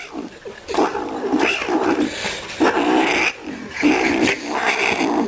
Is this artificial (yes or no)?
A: no